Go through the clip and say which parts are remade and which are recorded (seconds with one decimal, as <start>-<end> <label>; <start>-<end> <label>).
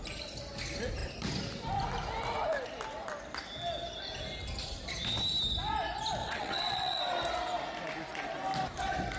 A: 0.0-6.2 recorded; 6.2-7.0 remade; 7.0-9.2 recorded